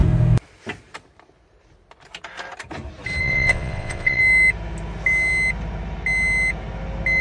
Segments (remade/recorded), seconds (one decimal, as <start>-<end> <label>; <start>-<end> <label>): 0.0-3.2 recorded; 3.2-4.2 remade; 4.2-7.2 recorded